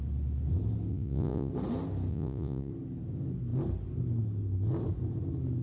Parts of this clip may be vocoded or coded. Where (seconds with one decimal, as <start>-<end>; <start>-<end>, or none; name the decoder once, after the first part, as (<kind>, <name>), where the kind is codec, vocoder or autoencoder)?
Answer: 0.9-1.5 (vocoder, Vocos); 2.1-2.7